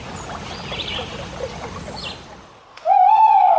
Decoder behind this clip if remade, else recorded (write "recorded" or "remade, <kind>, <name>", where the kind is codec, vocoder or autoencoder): recorded